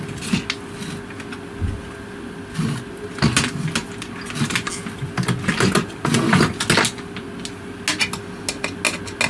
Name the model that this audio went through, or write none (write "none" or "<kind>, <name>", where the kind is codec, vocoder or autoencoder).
none